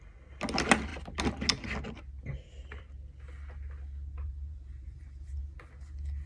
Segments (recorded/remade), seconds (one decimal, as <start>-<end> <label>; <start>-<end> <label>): 0.0-4.1 recorded; 4.1-5.4 remade; 5.4-6.3 recorded